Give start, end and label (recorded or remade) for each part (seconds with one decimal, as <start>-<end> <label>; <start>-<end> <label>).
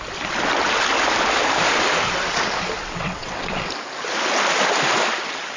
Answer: 0.0-2.8 recorded; 2.8-3.6 remade; 3.6-5.6 recorded